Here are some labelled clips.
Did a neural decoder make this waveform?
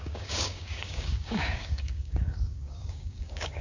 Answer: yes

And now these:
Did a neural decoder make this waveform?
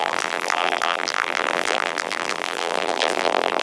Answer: yes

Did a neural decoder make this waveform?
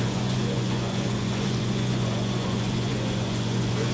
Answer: yes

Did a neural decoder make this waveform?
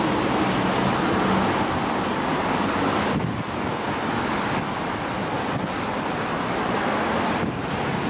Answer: no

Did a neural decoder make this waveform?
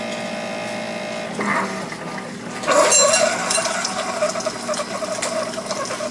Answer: no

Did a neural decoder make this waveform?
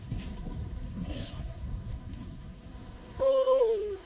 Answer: yes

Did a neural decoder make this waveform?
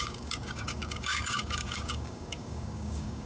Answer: yes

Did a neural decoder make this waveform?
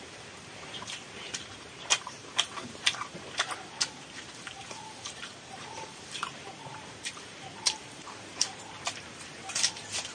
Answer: yes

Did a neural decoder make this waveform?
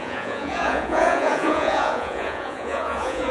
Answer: yes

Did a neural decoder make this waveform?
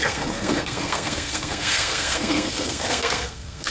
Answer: yes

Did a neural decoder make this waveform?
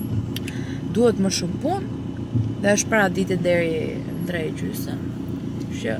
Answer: no